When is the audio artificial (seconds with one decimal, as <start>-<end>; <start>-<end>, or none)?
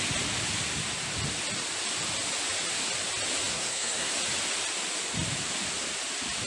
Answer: 3.5-4.1